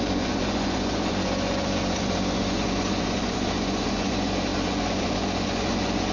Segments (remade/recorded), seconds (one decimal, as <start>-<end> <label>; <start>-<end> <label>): 0.0-6.1 remade